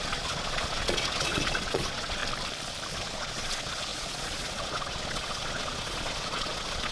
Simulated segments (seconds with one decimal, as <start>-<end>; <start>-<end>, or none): 0.0-2.2; 2.9-6.9